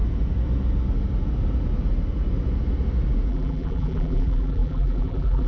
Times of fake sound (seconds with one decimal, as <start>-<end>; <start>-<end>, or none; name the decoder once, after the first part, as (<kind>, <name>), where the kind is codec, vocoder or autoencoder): 3.3-5.5 (vocoder, BigVGAN v2)